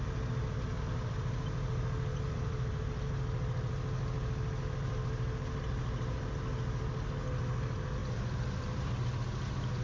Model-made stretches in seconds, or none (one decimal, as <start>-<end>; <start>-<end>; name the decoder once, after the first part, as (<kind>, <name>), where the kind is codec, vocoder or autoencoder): 0.7-3.7 (vocoder, BigVGAN v2); 8.0-9.2